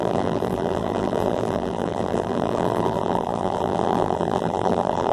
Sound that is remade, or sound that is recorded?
remade